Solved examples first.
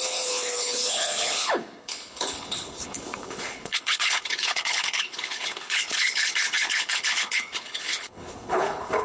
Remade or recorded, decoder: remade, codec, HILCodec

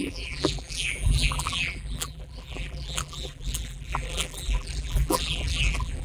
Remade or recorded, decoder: remade, vocoder, BigVGAN v2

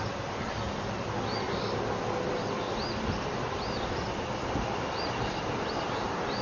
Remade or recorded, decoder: recorded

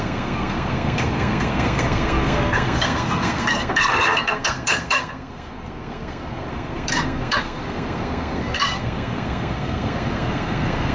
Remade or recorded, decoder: remade, codec, SNAC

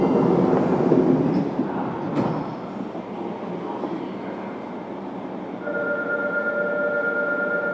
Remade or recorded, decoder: recorded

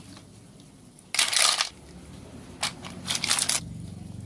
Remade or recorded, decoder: recorded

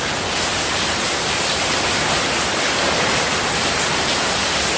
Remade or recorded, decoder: remade, vocoder, BigVGAN v2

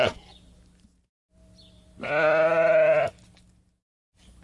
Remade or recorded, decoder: recorded